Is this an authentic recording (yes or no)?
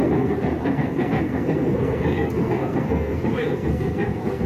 no